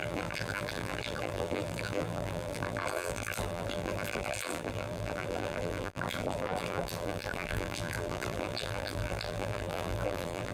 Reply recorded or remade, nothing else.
remade